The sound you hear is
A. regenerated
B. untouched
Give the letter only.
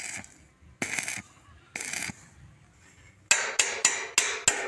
B